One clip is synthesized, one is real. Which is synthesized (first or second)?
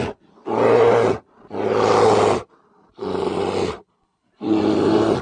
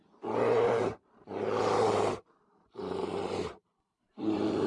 second